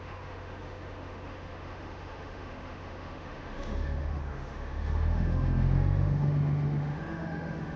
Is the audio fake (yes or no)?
yes